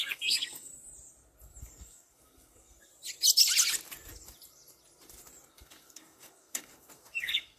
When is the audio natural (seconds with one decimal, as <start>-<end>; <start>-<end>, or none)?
0.7-1.6; 2.9-5.5